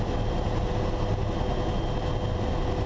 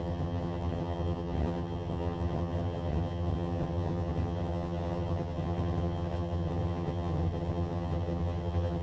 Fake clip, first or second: second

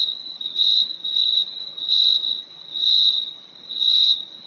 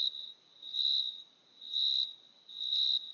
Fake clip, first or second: first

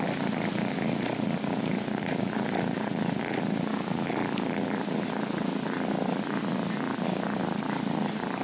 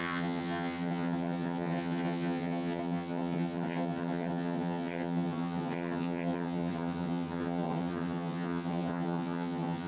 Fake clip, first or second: second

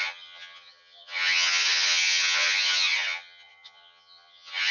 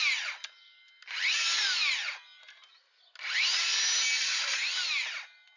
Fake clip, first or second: first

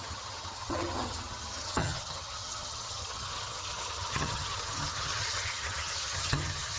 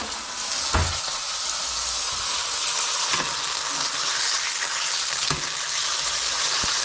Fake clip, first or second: first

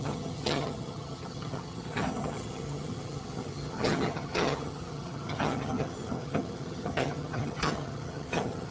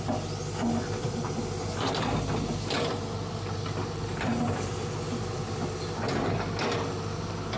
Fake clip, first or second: first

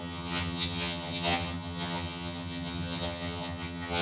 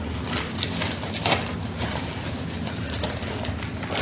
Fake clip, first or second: first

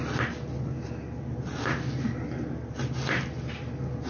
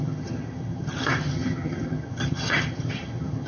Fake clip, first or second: second